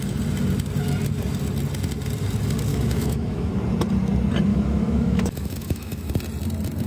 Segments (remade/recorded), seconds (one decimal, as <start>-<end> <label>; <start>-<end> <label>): 0.0-2.7 recorded; 2.7-3.5 remade; 3.5-4.5 recorded; 4.5-6.1 remade; 6.1-6.9 recorded